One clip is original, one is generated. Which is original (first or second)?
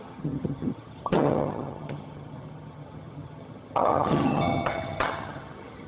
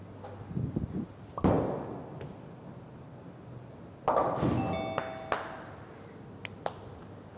second